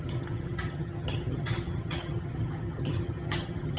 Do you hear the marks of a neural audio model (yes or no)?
yes